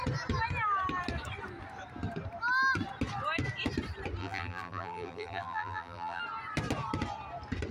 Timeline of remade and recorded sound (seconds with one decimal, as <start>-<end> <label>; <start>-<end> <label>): 0.0-4.2 recorded; 4.2-6.2 remade; 6.2-7.7 recorded